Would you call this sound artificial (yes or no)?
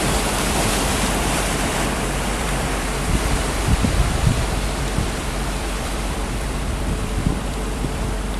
yes